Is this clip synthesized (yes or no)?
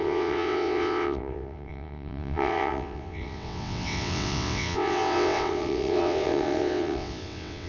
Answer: yes